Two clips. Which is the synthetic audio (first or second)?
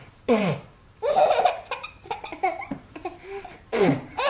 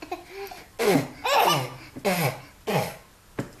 first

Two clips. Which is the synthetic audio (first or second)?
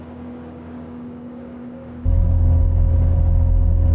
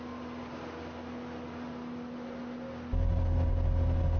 first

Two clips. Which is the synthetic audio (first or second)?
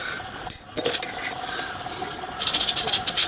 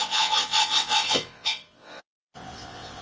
second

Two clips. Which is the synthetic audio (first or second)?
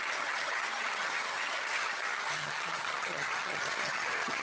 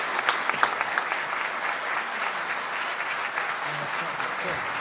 first